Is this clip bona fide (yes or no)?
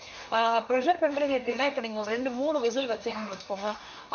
no